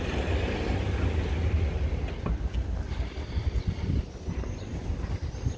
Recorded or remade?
recorded